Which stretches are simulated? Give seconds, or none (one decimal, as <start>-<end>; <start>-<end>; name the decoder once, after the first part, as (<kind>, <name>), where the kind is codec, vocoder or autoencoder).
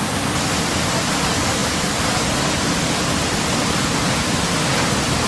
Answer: none